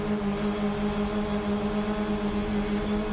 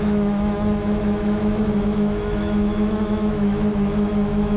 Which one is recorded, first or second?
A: first